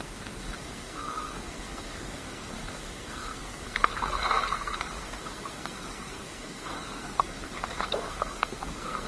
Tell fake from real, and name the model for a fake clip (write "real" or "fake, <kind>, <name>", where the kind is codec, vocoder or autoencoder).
fake, codec, SNAC